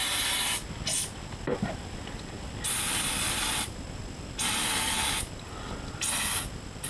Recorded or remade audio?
recorded